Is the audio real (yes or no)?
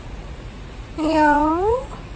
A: no